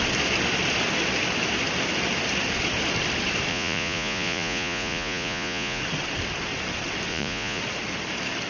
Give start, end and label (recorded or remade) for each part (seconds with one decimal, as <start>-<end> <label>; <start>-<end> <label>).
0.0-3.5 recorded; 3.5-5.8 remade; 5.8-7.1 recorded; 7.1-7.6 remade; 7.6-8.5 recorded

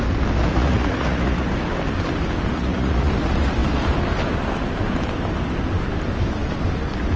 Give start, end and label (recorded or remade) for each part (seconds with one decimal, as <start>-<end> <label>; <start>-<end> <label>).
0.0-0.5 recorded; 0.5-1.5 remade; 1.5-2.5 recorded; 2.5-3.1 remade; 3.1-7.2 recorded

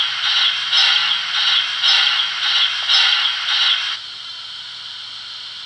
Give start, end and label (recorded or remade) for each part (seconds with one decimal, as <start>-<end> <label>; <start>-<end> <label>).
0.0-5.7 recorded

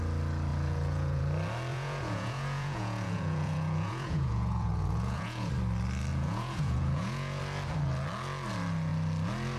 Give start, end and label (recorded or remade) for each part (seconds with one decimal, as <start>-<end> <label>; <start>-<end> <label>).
0.0-0.5 recorded; 0.5-1.2 remade; 1.2-1.7 recorded; 1.7-5.5 remade; 5.5-6.1 recorded; 6.1-7.4 remade; 7.4-9.6 recorded